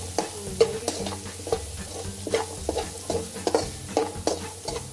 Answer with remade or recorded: recorded